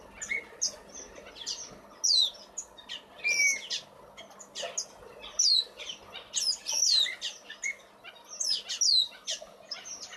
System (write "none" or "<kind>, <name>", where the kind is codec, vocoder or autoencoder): none